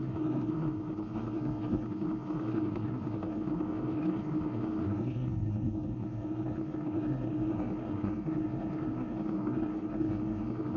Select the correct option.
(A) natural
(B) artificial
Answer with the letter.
B